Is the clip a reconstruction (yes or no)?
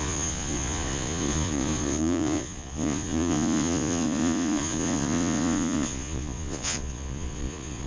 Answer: yes